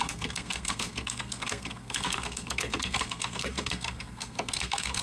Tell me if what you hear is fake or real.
fake